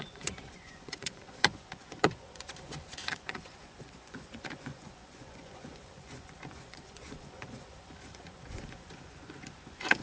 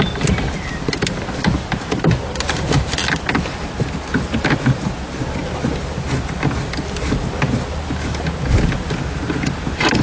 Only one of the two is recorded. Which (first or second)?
second